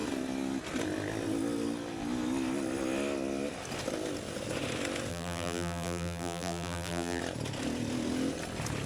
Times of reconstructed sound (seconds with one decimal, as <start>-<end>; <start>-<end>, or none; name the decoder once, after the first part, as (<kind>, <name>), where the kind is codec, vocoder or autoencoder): 5.1-7.2 (vocoder, BigVGAN v2)